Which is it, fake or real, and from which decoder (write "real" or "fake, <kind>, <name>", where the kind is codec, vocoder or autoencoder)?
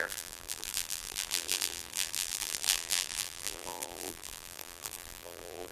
fake, vocoder, BigVGAN v2